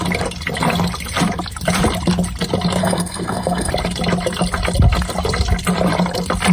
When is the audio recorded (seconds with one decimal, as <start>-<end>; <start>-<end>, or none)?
0.0-2.8; 3.7-6.5